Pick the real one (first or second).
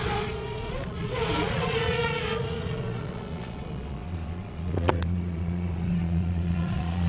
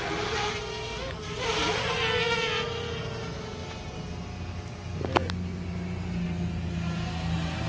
second